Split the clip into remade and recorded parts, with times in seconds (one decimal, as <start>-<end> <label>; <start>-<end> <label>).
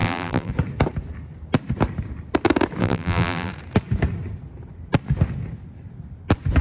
0.0-0.5 remade; 0.5-2.8 recorded; 2.8-3.5 remade; 3.5-6.6 recorded